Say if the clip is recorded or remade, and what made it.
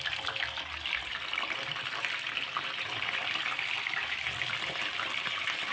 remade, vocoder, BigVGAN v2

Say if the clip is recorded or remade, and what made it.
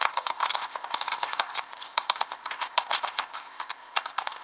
remade, codec, ZipCodec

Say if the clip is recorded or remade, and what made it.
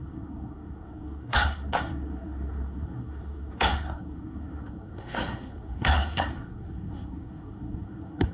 remade, codec, SNAC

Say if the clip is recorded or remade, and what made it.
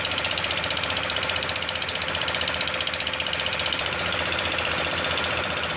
recorded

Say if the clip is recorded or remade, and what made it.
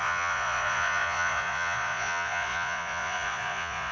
remade, vocoder, Vocos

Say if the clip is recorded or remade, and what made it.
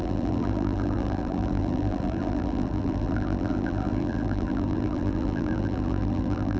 remade, vocoder, BigVGAN v2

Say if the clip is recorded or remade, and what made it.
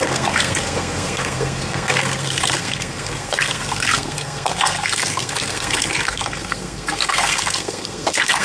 remade, codec, SNAC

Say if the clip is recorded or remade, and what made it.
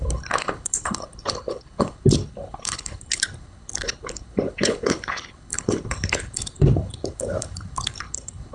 remade, codec, HILCodec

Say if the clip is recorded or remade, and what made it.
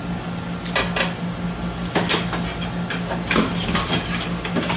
recorded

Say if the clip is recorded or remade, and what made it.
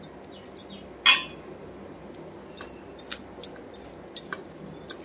recorded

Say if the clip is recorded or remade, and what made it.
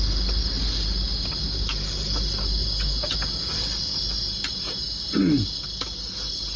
recorded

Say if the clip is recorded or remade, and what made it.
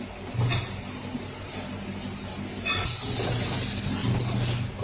recorded